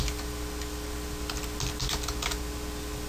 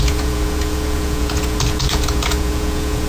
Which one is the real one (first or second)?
first